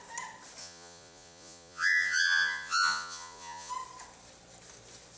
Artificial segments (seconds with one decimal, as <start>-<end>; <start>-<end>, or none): 0.6-3.7